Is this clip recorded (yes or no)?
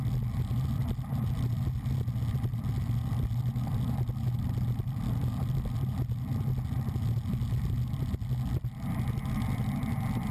yes